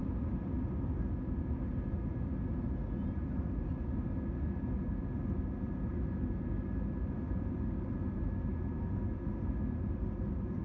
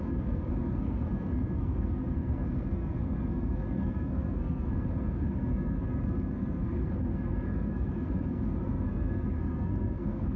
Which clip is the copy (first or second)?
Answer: second